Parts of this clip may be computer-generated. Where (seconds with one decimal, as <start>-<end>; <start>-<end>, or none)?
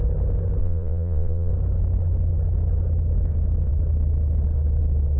0.6-1.5